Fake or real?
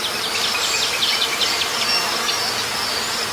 real